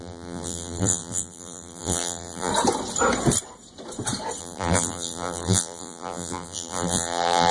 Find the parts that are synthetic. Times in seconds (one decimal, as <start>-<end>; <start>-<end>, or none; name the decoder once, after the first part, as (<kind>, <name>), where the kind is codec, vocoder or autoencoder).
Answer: 0.0-2.5 (vocoder, BigVGAN v2); 4.4-7.5